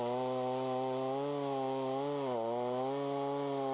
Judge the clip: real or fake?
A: real